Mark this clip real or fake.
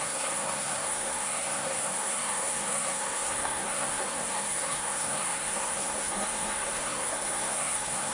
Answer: fake